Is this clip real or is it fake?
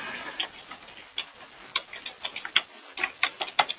real